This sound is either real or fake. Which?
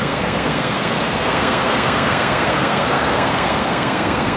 fake